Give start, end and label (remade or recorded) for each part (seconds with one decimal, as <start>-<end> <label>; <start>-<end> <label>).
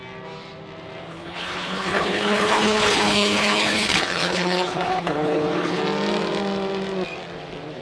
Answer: 0.0-1.1 recorded; 1.1-5.8 remade; 5.8-7.8 recorded